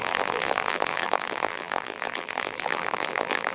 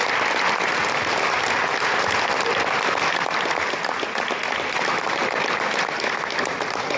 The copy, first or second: first